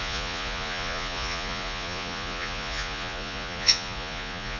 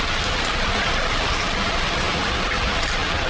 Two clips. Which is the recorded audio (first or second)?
second